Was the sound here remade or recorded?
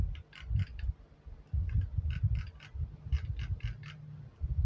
recorded